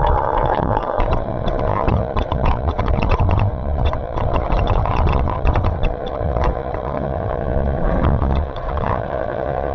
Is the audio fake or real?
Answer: fake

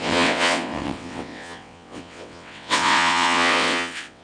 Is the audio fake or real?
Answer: fake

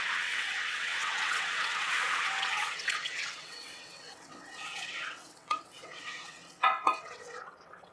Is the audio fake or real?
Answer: fake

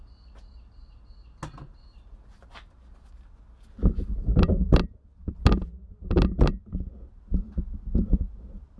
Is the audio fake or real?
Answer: real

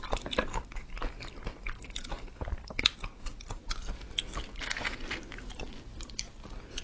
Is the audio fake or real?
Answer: real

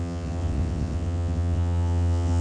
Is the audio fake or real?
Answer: fake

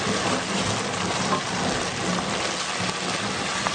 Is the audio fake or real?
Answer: real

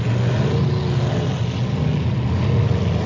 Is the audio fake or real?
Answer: real